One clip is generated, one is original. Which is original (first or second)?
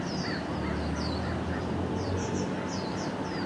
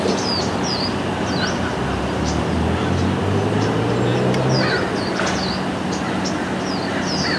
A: second